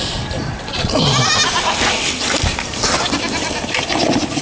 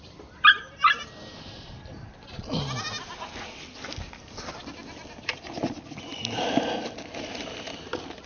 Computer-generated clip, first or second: first